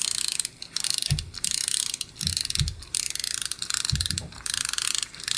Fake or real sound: fake